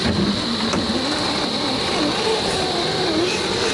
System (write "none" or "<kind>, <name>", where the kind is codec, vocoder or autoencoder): none